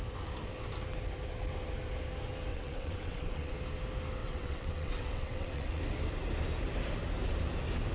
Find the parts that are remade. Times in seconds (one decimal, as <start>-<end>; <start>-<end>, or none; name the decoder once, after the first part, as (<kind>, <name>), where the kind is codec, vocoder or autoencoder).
2.5-3.5 (vocoder, WaveNeXt); 4.2-5.8